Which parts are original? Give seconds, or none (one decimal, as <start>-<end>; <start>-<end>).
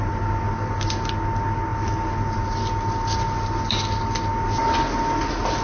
0.0-5.6